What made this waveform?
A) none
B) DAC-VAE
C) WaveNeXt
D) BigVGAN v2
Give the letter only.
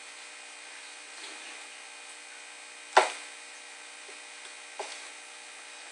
A